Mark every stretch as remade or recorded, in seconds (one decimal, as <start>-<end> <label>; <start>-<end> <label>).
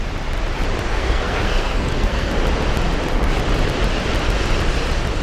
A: 0.0-0.9 recorded; 0.9-2.3 remade; 2.3-5.2 recorded